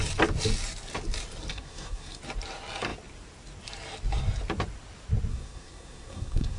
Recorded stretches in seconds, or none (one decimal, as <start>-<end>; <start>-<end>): 0.0-1.5; 2.2-5.3